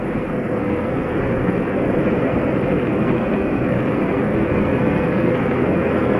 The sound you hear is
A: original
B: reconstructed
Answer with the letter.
B